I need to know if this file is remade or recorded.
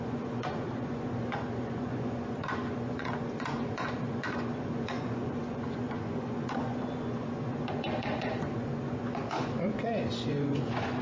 remade